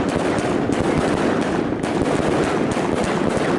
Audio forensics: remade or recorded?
recorded